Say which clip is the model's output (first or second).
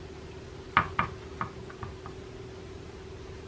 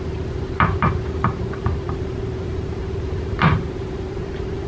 second